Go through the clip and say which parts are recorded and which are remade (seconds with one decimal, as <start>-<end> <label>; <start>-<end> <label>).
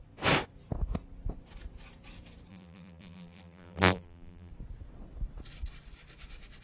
0.0-2.5 recorded; 2.5-4.5 remade; 4.5-6.6 recorded